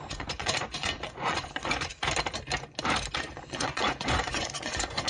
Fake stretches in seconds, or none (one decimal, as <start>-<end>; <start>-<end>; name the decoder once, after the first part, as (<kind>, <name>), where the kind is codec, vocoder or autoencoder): 0.0-1.9 (vocoder, Vocos); 3.1-5.1